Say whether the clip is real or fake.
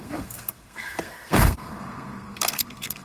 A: fake